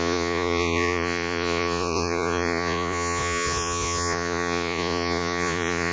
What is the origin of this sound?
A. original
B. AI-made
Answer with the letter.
B